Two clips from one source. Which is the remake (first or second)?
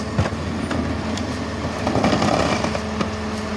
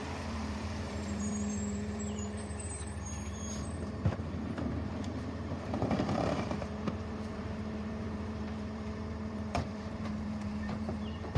second